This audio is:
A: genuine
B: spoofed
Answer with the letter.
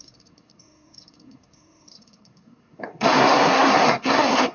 B